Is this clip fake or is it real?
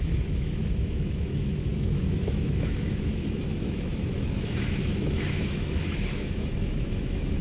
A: fake